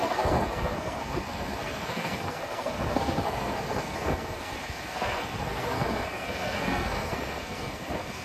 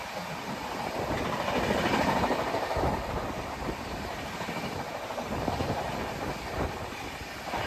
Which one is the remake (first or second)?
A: first